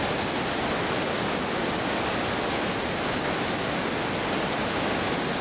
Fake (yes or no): no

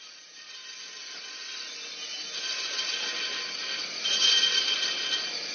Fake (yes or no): no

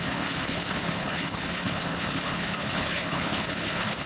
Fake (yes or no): yes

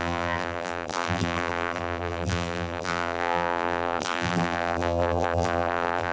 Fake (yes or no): yes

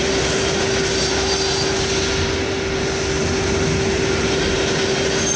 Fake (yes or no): no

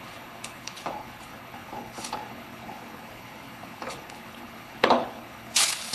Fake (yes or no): yes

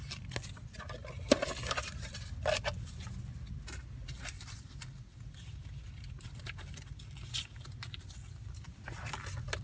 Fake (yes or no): no